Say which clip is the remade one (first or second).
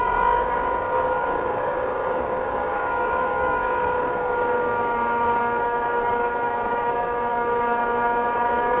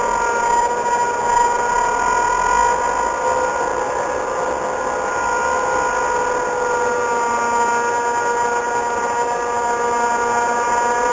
first